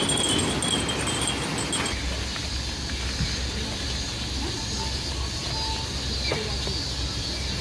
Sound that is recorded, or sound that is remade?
recorded